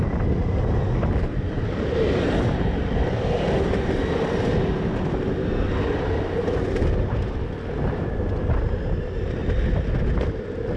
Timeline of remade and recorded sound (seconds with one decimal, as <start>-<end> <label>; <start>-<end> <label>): 0.0-10.8 recorded